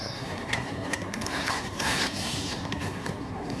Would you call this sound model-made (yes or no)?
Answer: yes